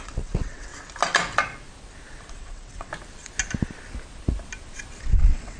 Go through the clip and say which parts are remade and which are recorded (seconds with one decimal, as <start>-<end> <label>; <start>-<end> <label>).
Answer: 0.0-0.7 remade; 0.7-2.3 recorded; 2.3-2.9 remade; 2.9-5.0 recorded; 5.0-5.6 remade